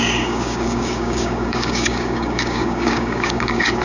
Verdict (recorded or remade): remade